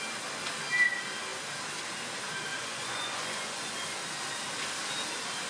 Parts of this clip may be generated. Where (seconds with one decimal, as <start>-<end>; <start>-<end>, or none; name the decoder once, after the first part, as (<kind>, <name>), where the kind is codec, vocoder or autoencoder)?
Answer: 2.5-3.7 (vocoder, Vocos)